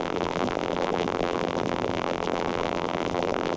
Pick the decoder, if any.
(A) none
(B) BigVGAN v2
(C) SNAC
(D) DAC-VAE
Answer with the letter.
B